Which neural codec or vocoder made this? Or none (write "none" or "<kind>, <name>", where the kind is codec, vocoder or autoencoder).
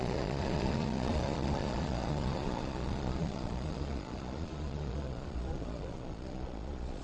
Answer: vocoder, Vocos